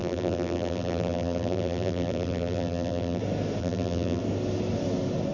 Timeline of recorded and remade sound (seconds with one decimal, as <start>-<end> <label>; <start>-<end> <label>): 0.0-3.2 remade; 3.2-3.6 recorded; 3.6-4.2 remade; 4.2-5.3 recorded